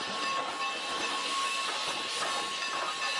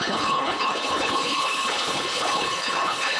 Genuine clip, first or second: first